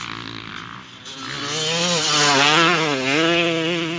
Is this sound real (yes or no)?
yes